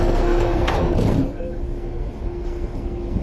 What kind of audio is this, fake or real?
fake